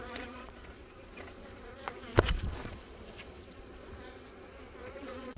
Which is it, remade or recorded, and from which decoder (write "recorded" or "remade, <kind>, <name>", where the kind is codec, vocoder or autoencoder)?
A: remade, vocoder, Vocos